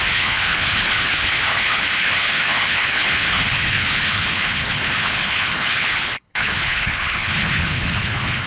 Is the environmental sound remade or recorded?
remade